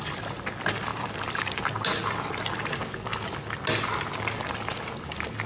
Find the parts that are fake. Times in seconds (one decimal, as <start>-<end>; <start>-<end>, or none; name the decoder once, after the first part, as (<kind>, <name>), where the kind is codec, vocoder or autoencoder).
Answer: 0.9-1.5 (vocoder, BigVGAN v2)